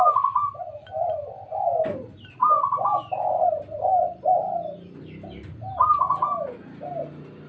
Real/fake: real